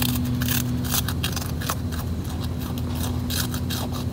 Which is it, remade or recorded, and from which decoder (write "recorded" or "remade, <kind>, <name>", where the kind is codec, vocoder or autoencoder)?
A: recorded